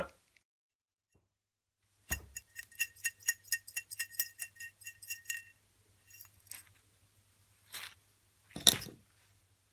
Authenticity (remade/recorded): recorded